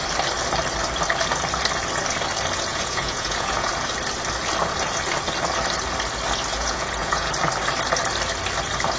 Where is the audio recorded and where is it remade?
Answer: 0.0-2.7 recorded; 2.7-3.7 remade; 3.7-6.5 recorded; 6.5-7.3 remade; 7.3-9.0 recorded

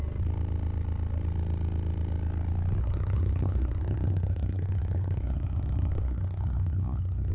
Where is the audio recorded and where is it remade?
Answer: 0.0-2.8 recorded; 2.8-7.3 remade

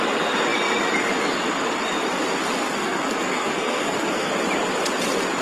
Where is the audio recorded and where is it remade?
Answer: 0.0-2.8 recorded; 2.8-4.3 remade; 4.3-5.4 recorded

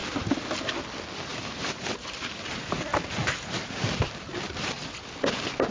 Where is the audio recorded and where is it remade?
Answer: 0.0-0.7 remade; 0.7-1.3 recorded; 1.3-2.8 remade; 2.8-3.2 recorded; 3.2-4.7 remade; 4.7-5.7 recorded

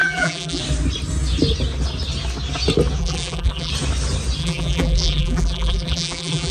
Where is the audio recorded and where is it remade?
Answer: 0.0-0.6 remade; 0.6-3.0 recorded; 3.0-3.7 remade; 3.7-4.4 recorded; 4.4-6.5 remade

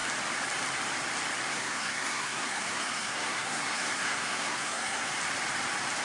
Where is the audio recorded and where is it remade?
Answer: 0.0-1.5 recorded; 1.5-5.1 remade; 5.1-6.0 recorded

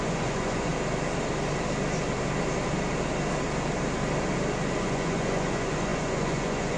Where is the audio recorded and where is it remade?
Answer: 0.0-0.7 remade; 0.7-4.8 recorded; 4.8-6.8 remade